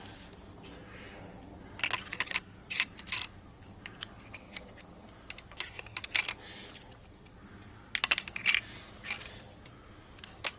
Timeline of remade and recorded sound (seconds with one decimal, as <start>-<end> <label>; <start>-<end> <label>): 0.0-10.6 recorded